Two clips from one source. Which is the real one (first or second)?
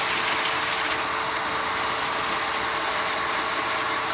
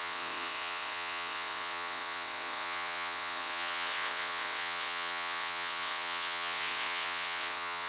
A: first